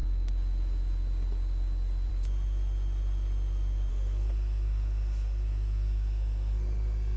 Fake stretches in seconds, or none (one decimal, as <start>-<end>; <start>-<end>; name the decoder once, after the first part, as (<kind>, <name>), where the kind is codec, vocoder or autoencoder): 3.9-7.2 (codec, SNAC)